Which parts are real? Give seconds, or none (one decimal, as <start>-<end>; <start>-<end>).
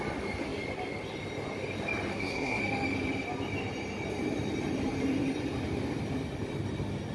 0.0-2.1; 2.6-7.1